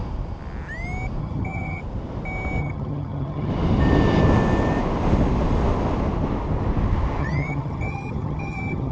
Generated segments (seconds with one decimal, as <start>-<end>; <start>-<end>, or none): 1.2-1.8; 2.6-3.5; 7.2-8.9